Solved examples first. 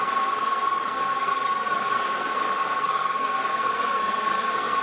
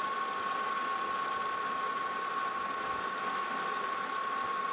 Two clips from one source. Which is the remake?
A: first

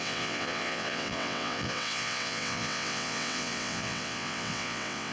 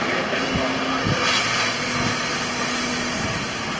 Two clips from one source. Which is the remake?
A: first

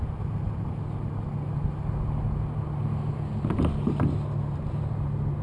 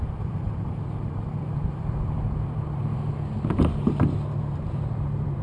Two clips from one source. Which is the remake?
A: second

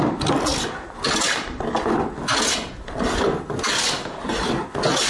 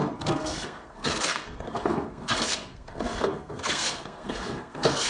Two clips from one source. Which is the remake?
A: second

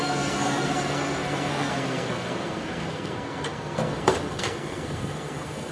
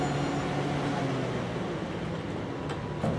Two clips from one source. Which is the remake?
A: first